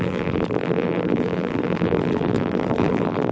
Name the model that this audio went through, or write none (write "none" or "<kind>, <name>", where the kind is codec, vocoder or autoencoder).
vocoder, BigVGAN v2